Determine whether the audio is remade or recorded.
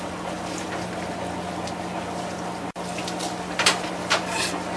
recorded